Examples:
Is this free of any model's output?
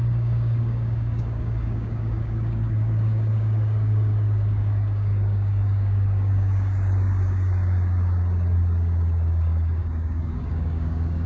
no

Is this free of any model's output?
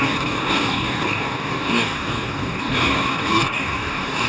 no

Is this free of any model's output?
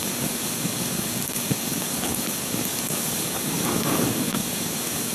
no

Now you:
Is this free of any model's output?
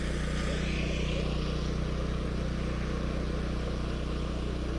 yes